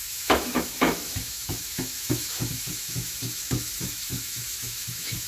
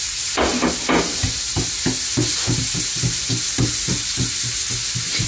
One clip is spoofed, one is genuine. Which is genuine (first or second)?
second